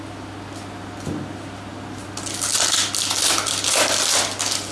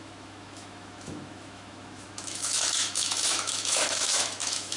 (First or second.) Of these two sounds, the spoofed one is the second